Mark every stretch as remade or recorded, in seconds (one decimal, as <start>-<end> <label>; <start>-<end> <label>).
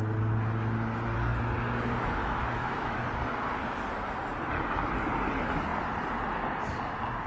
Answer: 0.0-2.2 recorded; 2.2-3.0 remade; 3.0-7.3 recorded